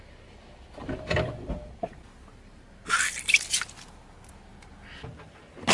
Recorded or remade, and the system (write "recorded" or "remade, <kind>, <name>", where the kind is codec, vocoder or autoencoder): recorded